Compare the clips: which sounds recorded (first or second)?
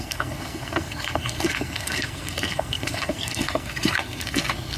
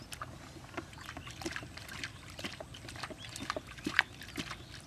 second